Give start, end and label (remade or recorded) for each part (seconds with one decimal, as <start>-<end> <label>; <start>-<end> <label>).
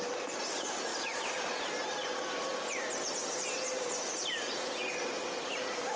0.0-0.9 recorded; 0.9-1.7 remade; 1.7-6.0 recorded